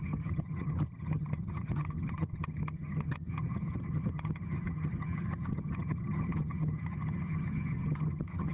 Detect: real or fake fake